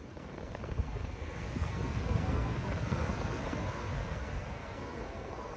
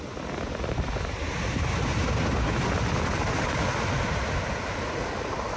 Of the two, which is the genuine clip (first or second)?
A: second